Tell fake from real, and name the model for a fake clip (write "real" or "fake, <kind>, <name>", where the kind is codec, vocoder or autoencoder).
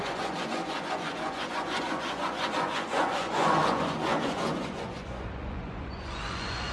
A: fake, vocoder, Vocos